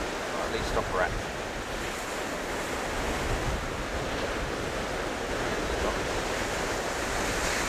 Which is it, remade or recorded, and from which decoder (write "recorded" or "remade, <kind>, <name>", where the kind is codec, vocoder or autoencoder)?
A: recorded